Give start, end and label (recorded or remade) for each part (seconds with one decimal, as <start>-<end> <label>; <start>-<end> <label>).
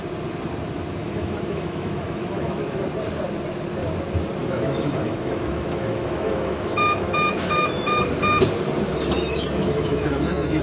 0.0-1.0 recorded; 1.0-2.8 remade; 2.8-4.4 recorded; 4.4-8.0 remade; 8.0-9.3 recorded; 9.3-10.6 remade